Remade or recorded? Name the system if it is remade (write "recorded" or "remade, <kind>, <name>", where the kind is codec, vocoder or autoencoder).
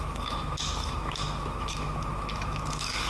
remade, autoencoder, DAC-VAE